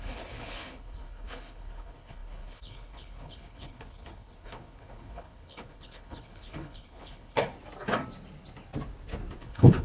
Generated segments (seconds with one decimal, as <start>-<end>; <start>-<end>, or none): 0.0-7.5; 9.4-9.8

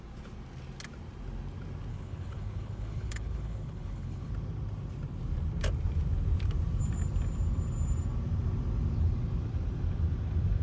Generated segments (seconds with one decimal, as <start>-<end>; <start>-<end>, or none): 1.9-4.3

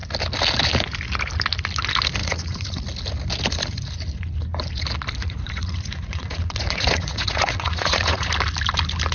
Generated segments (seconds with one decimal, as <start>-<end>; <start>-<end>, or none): 2.2-2.8; 5.2-8.3

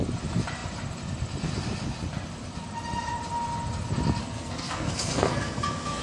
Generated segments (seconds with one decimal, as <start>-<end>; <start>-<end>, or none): 4.2-6.0

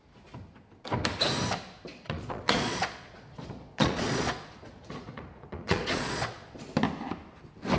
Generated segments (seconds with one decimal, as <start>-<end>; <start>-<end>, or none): 1.9-6.6

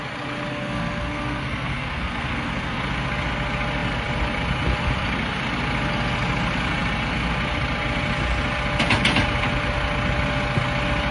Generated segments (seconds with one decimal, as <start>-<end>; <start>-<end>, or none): 0.5-2.8